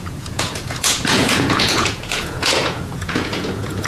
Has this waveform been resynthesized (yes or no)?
yes